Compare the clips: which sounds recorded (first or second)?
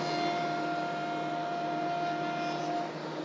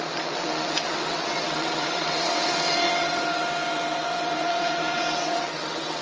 first